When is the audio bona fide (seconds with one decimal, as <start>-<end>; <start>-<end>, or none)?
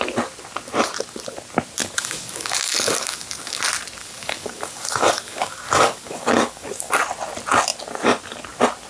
0.0-1.8; 3.6-4.0; 6.9-8.9